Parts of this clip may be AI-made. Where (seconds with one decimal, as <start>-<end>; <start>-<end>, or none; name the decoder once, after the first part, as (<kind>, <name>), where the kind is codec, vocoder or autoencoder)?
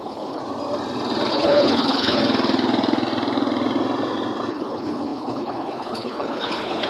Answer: 0.0-0.4 (codec, HILCodec); 1.3-2.2; 4.5-6.9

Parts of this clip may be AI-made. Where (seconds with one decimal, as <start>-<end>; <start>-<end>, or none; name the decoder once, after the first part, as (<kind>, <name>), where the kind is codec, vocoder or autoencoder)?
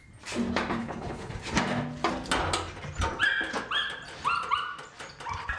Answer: 0.8-1.3 (codec, HILCodec)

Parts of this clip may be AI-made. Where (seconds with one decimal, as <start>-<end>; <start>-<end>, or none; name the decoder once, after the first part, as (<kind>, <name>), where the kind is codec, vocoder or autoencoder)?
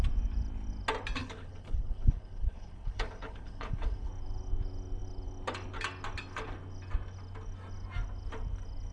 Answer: 1.2-4.1 (codec, HILCodec)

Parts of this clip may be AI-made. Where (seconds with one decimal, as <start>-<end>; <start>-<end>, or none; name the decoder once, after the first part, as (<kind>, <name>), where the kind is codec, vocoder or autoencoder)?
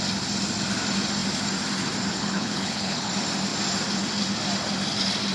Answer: 2.1-3.1 (codec, HILCodec)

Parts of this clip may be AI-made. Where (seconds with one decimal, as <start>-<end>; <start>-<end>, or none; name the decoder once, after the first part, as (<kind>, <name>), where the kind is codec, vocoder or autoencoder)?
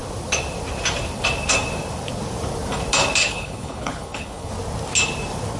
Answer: 3.2-4.5 (codec, HILCodec)